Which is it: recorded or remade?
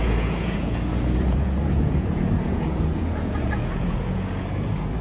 remade